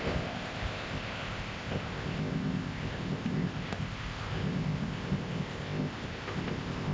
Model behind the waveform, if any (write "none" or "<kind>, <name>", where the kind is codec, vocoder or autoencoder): codec, ZipCodec